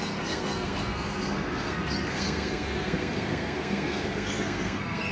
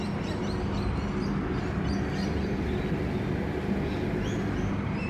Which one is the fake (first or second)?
first